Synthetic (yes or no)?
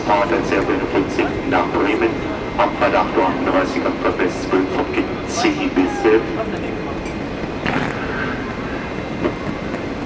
no